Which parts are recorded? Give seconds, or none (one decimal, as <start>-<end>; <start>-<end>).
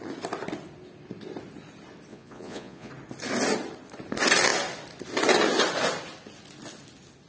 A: 0.0-2.1; 2.9-7.3